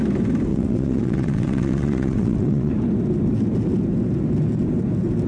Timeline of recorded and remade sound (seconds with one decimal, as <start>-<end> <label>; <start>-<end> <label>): 0.0-0.5 recorded; 0.5-2.7 remade; 2.7-5.3 recorded